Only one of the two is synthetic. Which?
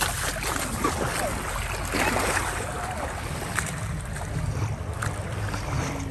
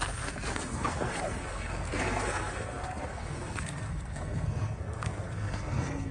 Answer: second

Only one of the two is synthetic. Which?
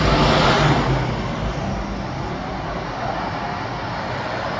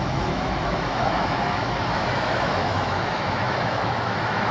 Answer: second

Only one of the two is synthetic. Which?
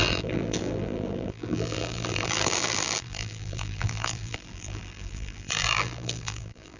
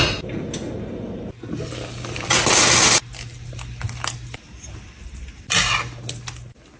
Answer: first